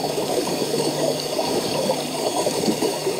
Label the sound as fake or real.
fake